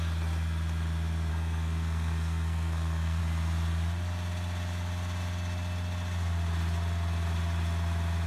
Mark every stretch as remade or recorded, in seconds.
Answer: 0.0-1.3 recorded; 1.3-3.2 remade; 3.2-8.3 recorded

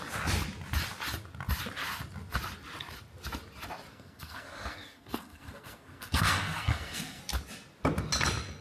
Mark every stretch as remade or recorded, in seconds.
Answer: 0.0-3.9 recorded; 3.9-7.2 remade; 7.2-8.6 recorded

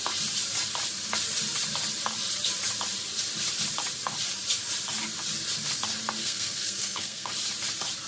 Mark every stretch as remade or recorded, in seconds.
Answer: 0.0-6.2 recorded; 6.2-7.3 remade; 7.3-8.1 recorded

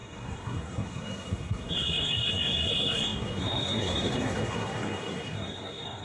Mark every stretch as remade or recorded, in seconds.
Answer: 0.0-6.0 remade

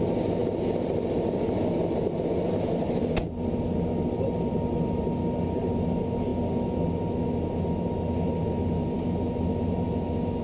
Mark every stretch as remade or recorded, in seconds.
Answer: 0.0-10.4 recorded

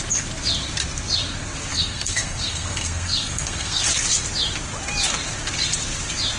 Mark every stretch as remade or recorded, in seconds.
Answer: 0.0-1.7 recorded; 1.7-3.9 remade; 3.9-6.4 recorded

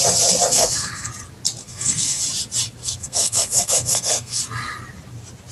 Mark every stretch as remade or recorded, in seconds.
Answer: 0.0-0.5 recorded; 0.5-1.1 remade; 1.1-1.6 recorded; 1.6-2.2 remade; 2.2-2.8 recorded; 2.8-4.4 remade; 4.4-5.5 recorded

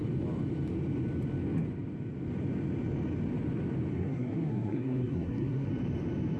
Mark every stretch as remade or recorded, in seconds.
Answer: 0.0-3.9 recorded; 3.9-5.7 remade; 5.7-6.4 recorded